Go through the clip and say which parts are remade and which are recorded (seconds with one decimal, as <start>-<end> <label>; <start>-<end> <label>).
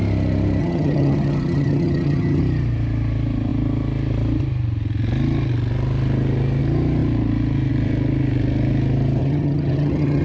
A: 0.0-0.6 recorded; 0.6-2.4 remade; 2.4-9.2 recorded; 9.2-10.2 remade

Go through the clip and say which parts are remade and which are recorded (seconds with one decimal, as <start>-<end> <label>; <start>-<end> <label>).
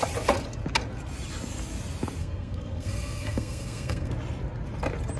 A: 0.0-2.2 recorded; 2.2-4.1 remade; 4.1-5.2 recorded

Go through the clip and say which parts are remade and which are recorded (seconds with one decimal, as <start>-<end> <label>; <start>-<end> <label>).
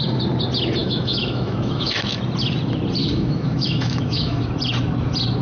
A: 0.0-0.8 recorded; 0.8-2.2 remade; 2.2-3.0 recorded; 3.0-4.4 remade; 4.4-5.4 recorded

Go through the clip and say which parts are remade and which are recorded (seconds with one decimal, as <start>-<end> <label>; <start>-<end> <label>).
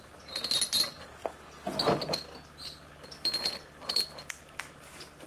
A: 0.0-5.3 recorded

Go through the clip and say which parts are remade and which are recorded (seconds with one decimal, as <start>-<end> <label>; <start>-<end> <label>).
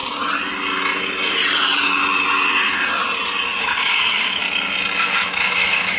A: 0.0-3.6 recorded; 3.6-4.4 remade; 4.4-5.0 recorded; 5.0-6.0 remade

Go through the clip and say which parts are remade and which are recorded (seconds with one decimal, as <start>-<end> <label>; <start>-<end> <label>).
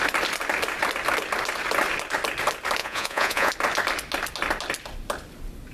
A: 0.0-2.8 recorded; 2.8-3.5 remade; 3.5-5.7 recorded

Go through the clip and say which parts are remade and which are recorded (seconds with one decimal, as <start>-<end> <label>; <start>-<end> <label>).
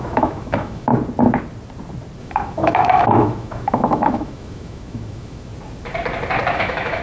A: 0.0-0.9 remade; 0.9-2.2 recorded; 2.2-5.5 remade; 5.5-6.5 recorded; 6.5-7.0 remade